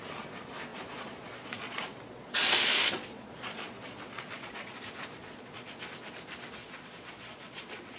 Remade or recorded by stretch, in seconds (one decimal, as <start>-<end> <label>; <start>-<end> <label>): 0.0-0.7 recorded; 0.7-4.8 remade; 4.8-5.2 recorded; 5.2-5.8 remade; 5.8-6.6 recorded; 6.6-8.0 remade